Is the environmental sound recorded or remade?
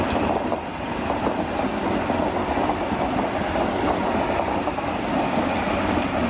recorded